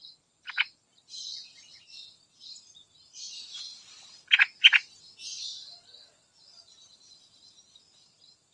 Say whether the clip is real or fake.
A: real